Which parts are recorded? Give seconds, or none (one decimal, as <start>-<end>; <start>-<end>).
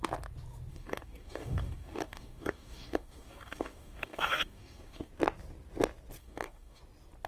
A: 0.0-0.7; 5.1-6.2; 6.8-7.3